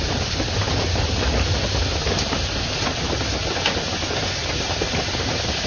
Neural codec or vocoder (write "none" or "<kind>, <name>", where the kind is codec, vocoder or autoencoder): none